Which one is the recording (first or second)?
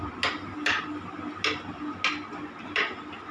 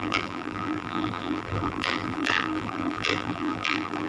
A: first